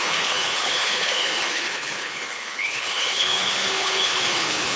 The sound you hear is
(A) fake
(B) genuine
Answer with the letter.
A